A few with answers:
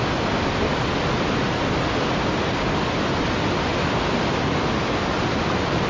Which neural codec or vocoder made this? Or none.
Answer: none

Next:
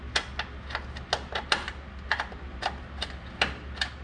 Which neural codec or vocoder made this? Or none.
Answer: none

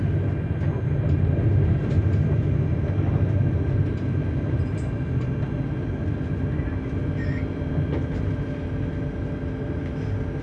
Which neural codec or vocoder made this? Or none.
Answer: none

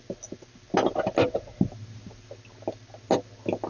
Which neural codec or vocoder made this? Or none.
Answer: none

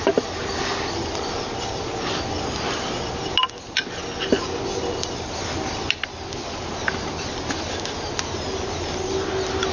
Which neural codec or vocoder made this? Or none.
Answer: none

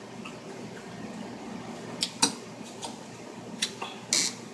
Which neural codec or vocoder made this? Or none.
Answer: none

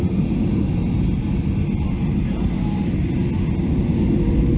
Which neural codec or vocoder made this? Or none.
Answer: none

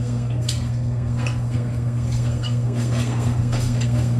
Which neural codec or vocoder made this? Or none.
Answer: codec, SNAC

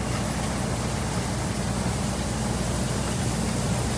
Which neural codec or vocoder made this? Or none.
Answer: none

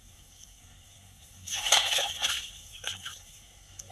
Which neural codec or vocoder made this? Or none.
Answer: codec, SNAC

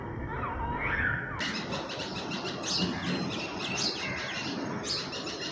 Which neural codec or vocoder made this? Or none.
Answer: none